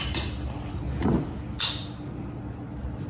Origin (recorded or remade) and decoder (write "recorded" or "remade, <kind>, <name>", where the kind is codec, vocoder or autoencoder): recorded